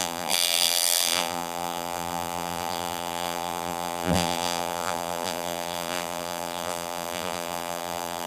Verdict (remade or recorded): remade